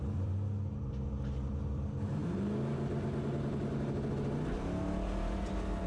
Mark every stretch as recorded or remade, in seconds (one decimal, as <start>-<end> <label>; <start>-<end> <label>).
0.0-2.2 remade; 2.2-5.9 recorded

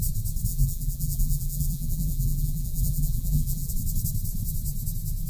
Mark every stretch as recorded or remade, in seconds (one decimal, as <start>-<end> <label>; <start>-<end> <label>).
0.0-0.5 recorded; 0.5-3.7 remade; 3.7-5.3 recorded

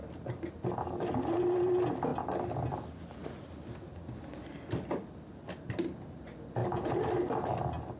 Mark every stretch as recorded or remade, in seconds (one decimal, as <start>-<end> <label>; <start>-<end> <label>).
0.0-0.5 remade; 0.5-6.6 recorded; 6.6-7.5 remade; 7.5-8.0 recorded

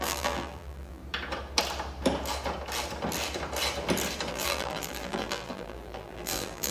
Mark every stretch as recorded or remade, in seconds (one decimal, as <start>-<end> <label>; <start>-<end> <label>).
0.0-1.0 remade; 1.0-4.3 recorded; 4.3-6.7 remade

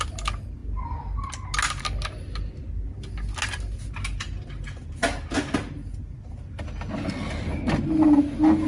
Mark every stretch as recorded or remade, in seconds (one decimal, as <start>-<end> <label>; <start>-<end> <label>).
0.0-8.7 recorded

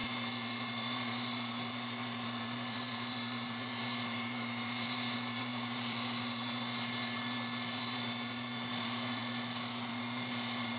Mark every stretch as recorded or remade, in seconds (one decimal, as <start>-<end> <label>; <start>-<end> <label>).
0.0-9.2 remade; 9.2-9.9 recorded; 9.9-10.8 remade

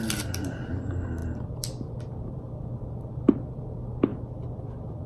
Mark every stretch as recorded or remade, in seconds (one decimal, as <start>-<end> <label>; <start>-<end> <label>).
0.0-1.2 recorded; 1.2-3.1 remade; 3.1-4.1 recorded; 4.1-5.1 remade

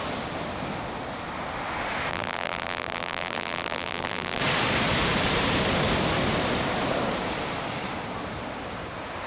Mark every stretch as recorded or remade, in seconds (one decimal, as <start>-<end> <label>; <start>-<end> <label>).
0.0-2.1 recorded; 2.1-4.4 remade; 4.4-9.3 recorded